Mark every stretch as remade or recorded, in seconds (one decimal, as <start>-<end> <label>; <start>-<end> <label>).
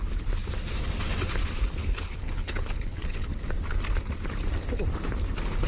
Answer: 0.0-1.8 recorded; 1.8-3.3 remade; 3.3-5.7 recorded